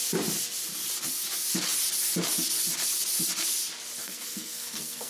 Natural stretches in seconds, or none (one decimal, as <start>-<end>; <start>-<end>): 0.0-4.0